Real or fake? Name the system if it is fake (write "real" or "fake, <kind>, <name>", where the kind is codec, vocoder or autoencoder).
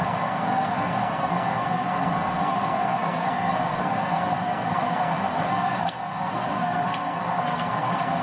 fake, codec, SNAC